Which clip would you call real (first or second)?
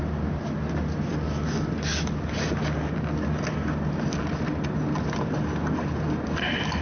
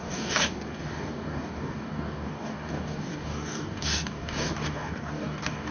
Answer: first